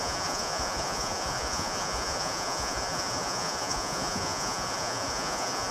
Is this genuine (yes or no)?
no